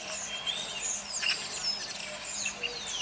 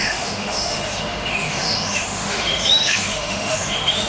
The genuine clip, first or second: first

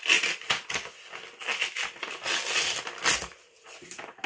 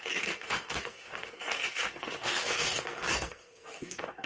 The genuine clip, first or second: first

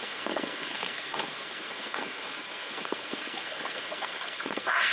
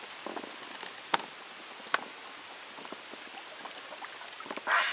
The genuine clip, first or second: second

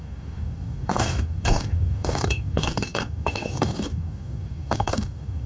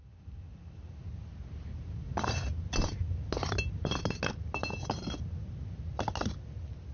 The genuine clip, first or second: second